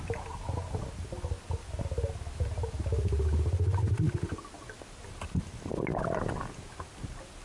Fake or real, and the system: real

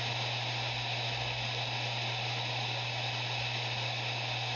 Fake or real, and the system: real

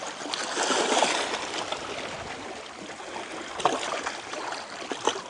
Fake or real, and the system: real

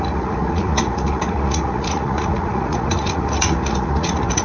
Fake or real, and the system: fake, vocoder, Vocos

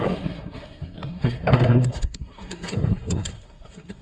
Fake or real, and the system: fake, codec, SNAC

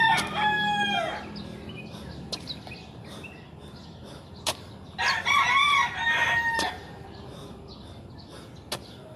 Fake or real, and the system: real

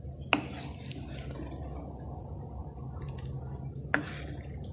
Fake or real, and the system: real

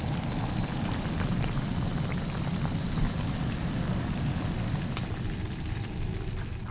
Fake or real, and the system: real